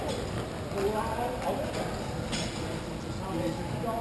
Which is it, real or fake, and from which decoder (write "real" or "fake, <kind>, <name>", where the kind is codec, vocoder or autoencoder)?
real